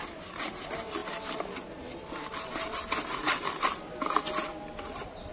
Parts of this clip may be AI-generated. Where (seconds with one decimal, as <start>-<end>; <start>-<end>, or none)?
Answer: none